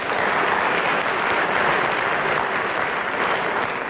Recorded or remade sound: recorded